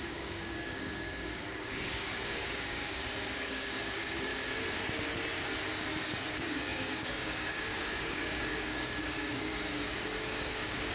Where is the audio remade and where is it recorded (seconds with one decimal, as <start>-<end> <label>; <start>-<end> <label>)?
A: 0.0-4.3 remade; 4.3-6.3 recorded; 6.3-10.9 remade